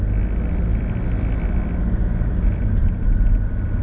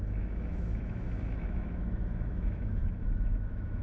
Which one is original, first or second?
first